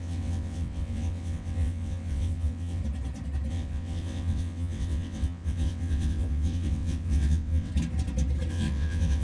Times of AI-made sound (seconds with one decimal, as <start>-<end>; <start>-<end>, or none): 0.0-2.8; 3.5-7.7; 8.5-9.2